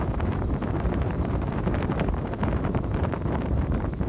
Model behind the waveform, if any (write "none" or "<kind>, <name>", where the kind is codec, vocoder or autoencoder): vocoder, BigVGAN v2